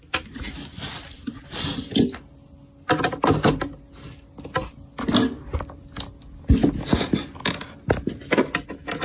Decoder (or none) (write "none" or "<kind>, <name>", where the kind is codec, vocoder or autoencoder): none